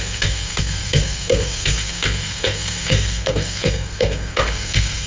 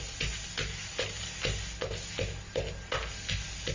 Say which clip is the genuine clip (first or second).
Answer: second